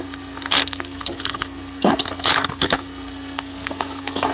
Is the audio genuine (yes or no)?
no